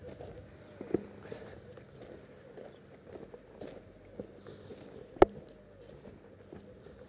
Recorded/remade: recorded